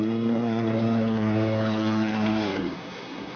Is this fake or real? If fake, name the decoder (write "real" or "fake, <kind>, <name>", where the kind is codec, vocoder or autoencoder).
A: fake, codec, SNAC